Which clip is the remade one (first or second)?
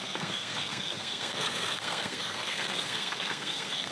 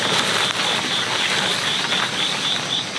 first